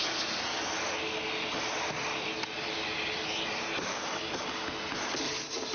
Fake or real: real